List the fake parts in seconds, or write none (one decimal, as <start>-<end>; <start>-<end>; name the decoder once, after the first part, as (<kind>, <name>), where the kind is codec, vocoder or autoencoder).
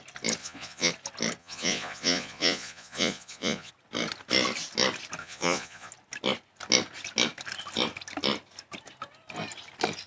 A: 0.4-0.9 (vocoder, Vocos); 1.4-3.7; 5.2-5.9